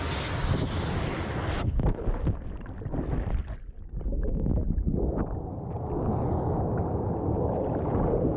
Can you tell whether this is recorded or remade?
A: recorded